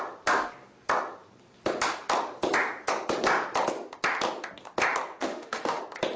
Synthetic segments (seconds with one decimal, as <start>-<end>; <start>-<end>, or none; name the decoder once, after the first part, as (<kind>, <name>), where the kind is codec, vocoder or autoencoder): 5.2-5.8 (autoencoder, DAC-VAE)